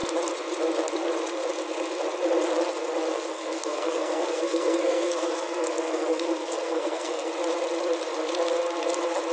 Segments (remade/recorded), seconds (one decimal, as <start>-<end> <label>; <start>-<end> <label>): 0.0-3.3 recorded; 3.3-7.3 remade; 7.3-9.3 recorded